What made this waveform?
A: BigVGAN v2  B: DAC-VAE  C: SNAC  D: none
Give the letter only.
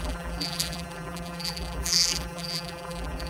A